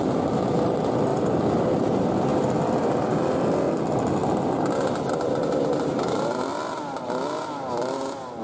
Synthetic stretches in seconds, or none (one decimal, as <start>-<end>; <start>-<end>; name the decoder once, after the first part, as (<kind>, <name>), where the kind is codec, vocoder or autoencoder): none